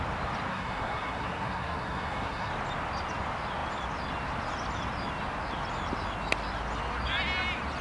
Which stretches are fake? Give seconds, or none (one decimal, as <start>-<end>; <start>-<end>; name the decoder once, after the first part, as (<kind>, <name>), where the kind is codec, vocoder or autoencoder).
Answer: 0.5-2.5 (codec, SNAC)